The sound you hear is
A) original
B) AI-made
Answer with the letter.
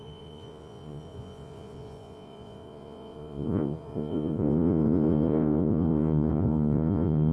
B